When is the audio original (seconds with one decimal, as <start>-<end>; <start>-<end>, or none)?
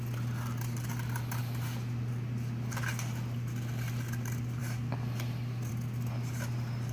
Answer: 0.0-6.9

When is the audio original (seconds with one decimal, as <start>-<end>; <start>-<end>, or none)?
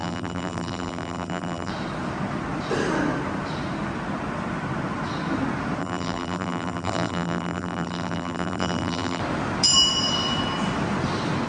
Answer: 1.7-5.8; 9.2-11.5